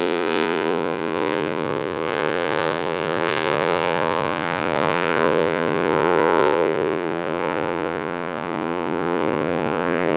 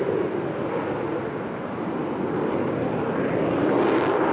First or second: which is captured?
second